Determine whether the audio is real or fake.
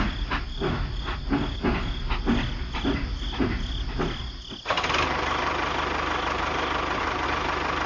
real